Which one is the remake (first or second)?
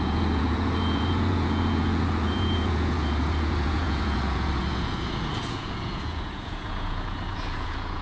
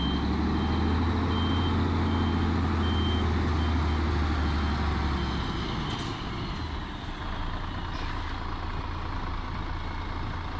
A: first